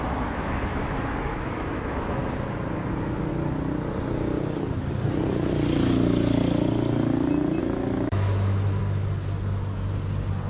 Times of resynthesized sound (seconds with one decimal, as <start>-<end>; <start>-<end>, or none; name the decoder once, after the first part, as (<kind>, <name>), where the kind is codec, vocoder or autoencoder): 0.0-2.2 (autoencoder, DAC-VAE); 2.9-3.3; 7.6-8.8